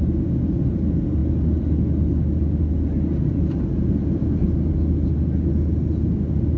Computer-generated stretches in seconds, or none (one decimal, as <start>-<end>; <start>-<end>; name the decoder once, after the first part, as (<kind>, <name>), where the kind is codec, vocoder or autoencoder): none